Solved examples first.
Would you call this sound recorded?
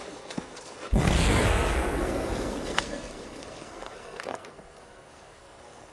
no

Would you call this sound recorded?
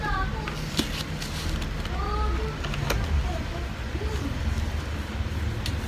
yes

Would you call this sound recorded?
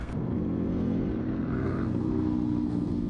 no